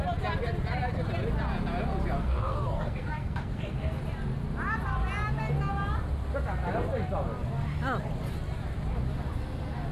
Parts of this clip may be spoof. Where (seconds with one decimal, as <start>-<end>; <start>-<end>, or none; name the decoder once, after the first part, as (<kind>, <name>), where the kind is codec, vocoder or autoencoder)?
2.2-4.0 (codec, SNAC)